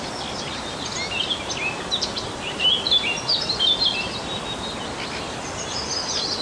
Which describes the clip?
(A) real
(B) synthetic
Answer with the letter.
A